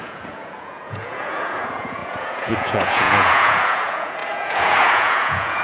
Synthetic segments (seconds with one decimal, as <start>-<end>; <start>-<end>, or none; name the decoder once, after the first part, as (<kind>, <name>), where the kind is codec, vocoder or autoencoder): 0.0-5.6 (vocoder, Vocos)